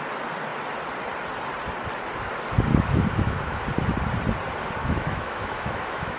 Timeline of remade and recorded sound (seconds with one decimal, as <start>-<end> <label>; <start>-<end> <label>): 0.0-2.7 recorded; 2.7-3.6 remade; 3.6-4.8 recorded; 4.8-6.2 remade